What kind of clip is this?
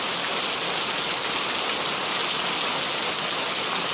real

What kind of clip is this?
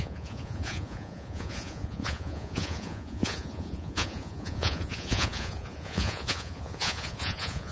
fake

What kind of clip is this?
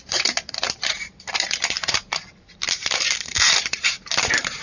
fake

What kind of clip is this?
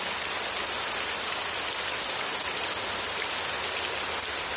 real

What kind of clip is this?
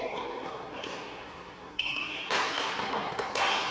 fake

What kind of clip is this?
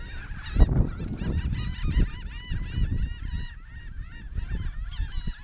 real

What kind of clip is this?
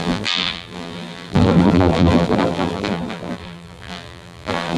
fake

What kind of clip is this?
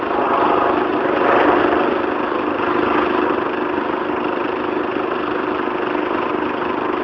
real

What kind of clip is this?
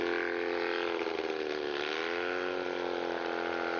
real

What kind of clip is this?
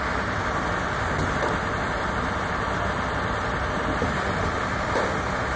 real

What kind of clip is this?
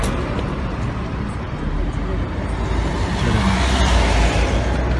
real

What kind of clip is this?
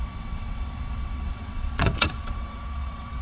fake